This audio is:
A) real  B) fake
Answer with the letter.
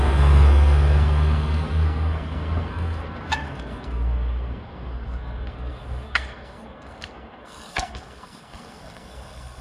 B